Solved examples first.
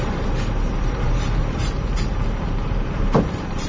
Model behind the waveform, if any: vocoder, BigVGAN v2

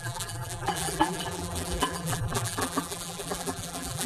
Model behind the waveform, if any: vocoder, BigVGAN v2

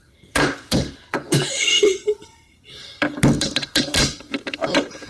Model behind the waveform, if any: vocoder, BigVGAN v2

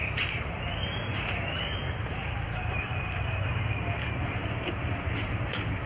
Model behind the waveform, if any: vocoder, BigVGAN v2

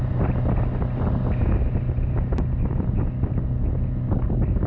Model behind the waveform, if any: none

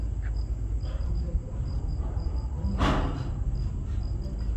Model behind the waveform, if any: none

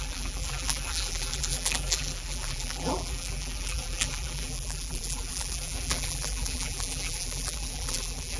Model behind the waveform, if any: vocoder, BigVGAN v2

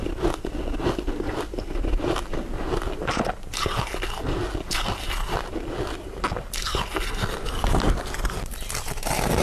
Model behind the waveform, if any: none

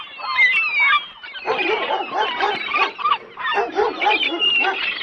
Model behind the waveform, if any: none